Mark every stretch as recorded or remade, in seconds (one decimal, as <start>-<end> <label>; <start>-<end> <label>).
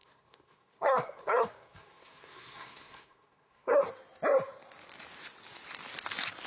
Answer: 0.0-3.9 remade; 3.9-6.5 recorded